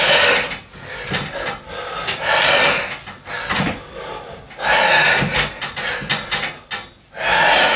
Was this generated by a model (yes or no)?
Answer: no